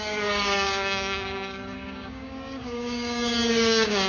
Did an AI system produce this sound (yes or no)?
yes